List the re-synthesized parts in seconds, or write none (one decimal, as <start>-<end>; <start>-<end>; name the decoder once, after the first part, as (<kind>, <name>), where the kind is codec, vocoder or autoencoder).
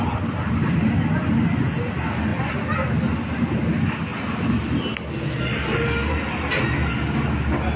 none